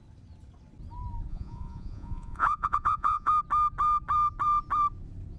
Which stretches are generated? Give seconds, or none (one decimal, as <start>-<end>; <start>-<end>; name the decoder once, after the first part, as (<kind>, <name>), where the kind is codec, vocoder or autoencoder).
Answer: 1.3-3.3 (vocoder, Vocos)